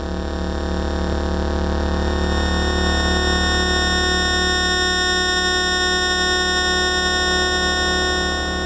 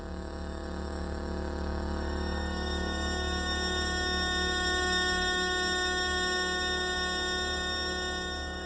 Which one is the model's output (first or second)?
second